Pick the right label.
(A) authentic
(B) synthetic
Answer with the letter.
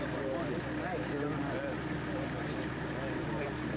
A